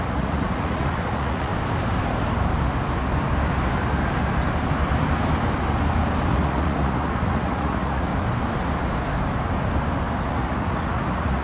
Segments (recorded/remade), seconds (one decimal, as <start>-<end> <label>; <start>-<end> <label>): 0.0-1.5 remade; 1.5-6.3 recorded; 6.3-8.1 remade; 8.1-10.3 recorded; 10.3-11.4 remade